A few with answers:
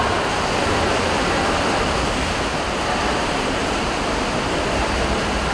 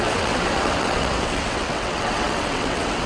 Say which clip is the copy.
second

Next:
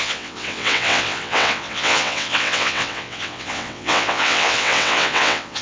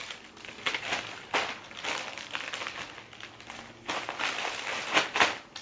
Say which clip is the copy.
first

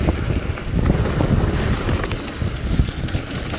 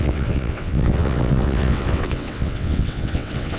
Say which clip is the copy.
second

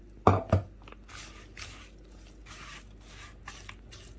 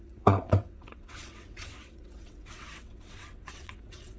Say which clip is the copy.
second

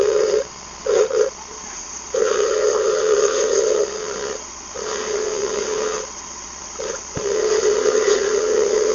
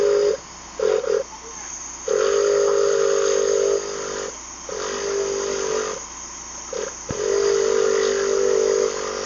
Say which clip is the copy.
first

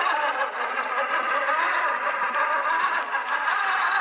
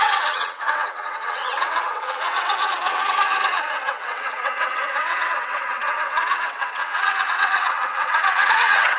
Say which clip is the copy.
second